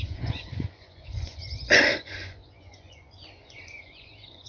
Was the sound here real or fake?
fake